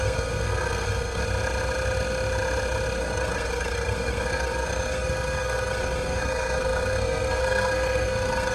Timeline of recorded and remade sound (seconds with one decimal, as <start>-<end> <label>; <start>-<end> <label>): 0.0-1.2 remade; 1.2-3.0 recorded; 3.0-8.5 remade